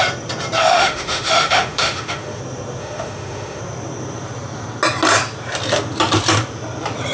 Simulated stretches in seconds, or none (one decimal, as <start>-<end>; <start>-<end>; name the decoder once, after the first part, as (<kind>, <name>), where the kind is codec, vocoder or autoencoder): 0.6-2.4 (autoencoder, DAC-VAE); 2.8-3.6